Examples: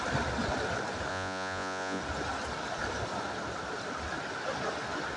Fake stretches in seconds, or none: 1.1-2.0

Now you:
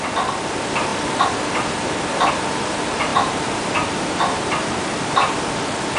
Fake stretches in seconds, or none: 3.1-4.9

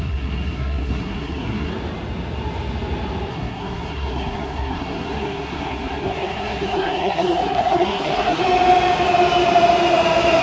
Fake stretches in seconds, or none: 0.0-1.7; 3.3-8.4